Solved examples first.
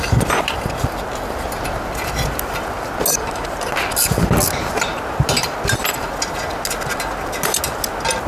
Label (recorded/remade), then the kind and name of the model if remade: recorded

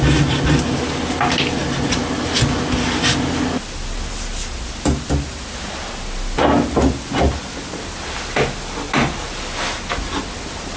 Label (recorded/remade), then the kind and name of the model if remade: recorded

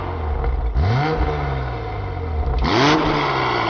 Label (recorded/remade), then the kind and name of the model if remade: recorded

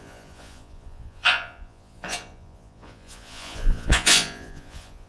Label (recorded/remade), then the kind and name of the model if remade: remade, vocoder, Vocos